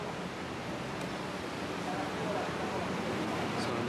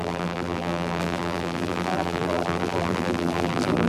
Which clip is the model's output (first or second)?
second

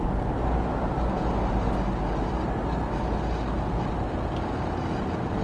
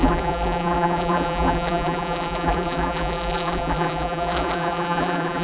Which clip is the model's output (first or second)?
second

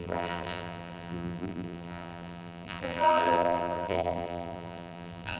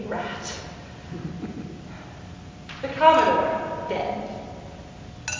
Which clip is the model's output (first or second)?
first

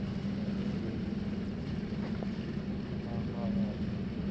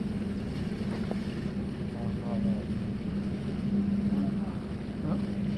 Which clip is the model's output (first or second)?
first